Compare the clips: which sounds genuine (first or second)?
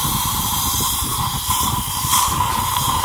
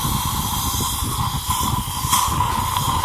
second